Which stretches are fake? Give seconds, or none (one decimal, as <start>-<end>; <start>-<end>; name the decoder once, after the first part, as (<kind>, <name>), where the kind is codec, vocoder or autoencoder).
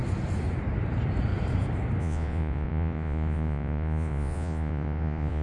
2.0-5.4 (vocoder, Vocos)